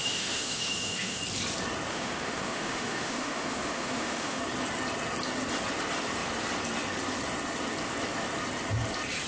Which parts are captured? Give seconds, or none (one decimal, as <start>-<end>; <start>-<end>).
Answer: 1.2-1.9; 4.4-9.3